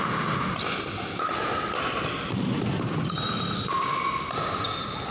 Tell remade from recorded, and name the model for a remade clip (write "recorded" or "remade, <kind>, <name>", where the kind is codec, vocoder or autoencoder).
recorded